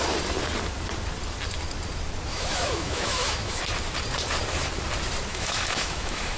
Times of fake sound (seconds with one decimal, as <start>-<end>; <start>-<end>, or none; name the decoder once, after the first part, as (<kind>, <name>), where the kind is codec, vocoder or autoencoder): 2.3-3.6 (autoencoder, DAC-VAE); 5.3-6.4